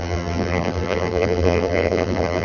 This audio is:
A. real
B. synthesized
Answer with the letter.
B